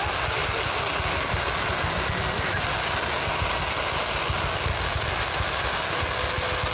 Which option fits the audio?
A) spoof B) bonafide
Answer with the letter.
B